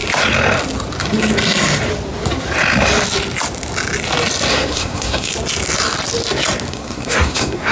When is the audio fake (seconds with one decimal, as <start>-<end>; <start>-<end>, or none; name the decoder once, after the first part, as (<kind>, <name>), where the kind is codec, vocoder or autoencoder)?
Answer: 4.5-5.3 (codec, SNAC); 6.7-7.7